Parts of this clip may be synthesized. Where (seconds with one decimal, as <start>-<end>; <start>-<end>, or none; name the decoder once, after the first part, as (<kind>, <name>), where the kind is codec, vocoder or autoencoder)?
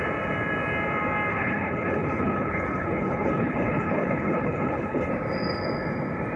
1.3-5.1 (codec, HILCodec)